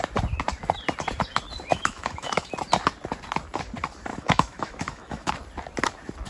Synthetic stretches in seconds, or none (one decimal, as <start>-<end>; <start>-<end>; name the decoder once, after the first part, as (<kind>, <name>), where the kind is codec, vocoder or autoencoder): 1.7-2.5 (autoencoder, DAC-VAE); 4.1-5.3